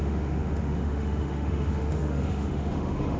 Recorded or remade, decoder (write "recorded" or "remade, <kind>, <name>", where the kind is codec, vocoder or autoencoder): remade, autoencoder, DAC-VAE